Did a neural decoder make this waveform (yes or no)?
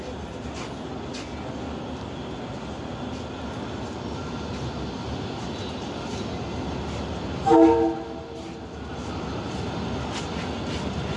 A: no